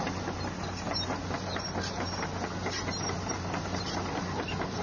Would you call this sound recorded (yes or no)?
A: yes